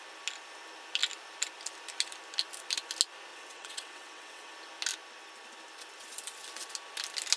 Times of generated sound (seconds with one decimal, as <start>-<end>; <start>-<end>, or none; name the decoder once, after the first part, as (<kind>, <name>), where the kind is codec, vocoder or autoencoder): 3.3-4.5 (vocoder, WaveNeXt)